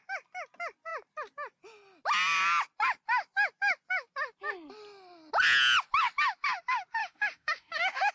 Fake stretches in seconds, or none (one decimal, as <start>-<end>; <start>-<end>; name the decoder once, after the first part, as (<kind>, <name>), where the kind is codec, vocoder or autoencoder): 7.0-8.1 (autoencoder, DAC-VAE)